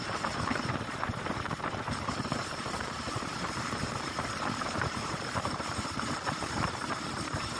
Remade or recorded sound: remade